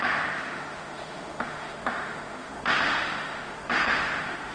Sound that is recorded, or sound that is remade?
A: remade